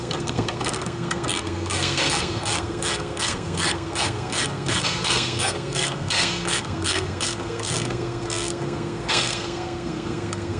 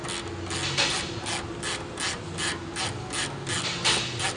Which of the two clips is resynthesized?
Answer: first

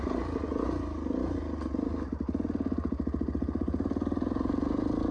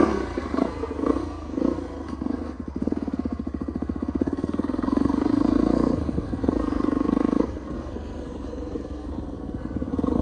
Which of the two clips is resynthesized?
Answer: second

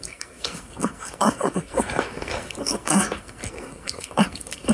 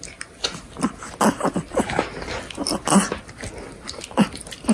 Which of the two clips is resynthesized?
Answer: first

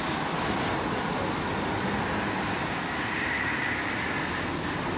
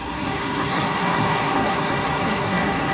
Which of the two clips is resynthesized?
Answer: second